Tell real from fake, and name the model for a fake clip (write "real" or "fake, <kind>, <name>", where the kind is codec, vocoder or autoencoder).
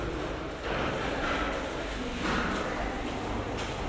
real